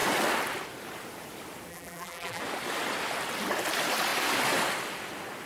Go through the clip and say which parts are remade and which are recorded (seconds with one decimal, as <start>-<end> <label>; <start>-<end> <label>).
0.0-1.7 recorded; 1.7-2.4 remade; 2.4-5.5 recorded